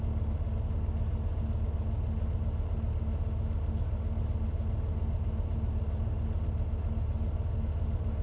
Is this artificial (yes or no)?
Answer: no